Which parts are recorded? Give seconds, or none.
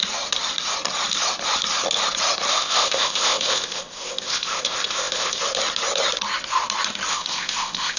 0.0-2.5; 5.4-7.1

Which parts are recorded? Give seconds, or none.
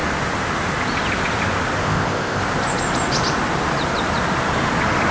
0.0-1.8; 2.4-5.1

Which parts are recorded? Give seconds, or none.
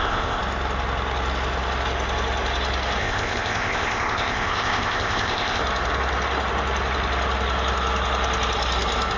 0.4-3.0; 5.6-9.2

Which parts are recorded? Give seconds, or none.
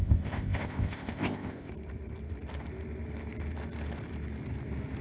1.7-5.0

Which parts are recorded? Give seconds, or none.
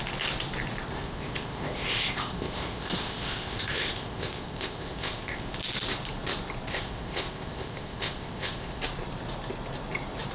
0.0-0.9; 5.5-6.7; 8.8-10.3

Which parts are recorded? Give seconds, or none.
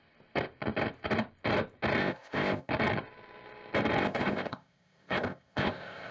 0.0-2.0; 2.7-4.0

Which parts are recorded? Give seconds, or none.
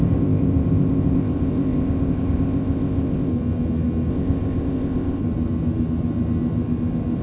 3.3-4.1; 5.2-7.2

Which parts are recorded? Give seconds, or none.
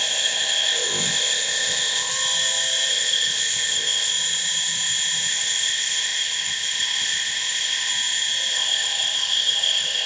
2.1-2.9; 4.1-5.3; 7.9-8.5